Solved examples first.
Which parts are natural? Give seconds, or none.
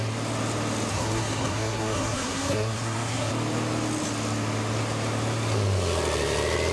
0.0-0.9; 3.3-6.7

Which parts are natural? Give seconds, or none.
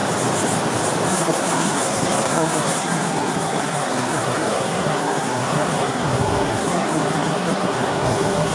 0.0-1.1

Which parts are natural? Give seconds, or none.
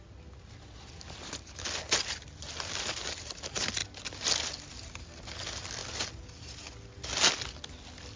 0.0-8.2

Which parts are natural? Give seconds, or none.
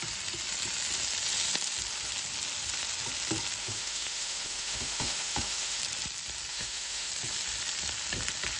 0.0-3.6; 5.8-6.5; 7.1-8.6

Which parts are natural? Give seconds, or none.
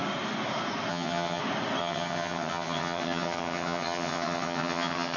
0.0-0.9; 1.4-1.8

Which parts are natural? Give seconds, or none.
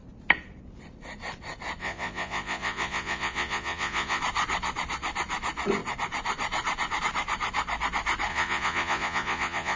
0.0-1.8; 4.2-8.3